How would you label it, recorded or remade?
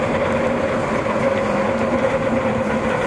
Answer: recorded